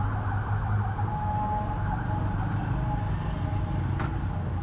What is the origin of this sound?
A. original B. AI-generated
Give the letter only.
A